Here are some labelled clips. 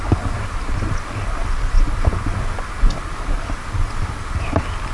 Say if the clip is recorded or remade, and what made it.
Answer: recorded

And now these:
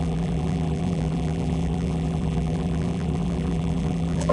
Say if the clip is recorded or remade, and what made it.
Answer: remade, vocoder, BigVGAN v2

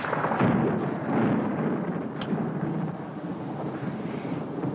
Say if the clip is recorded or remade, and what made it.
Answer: recorded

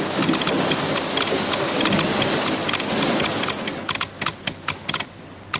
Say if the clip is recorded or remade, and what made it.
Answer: recorded